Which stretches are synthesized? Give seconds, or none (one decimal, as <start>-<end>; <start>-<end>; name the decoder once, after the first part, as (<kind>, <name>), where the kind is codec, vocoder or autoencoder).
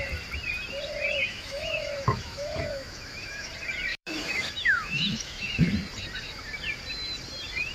1.2-3.5 (autoencoder, DAC-VAE); 3.9-5.7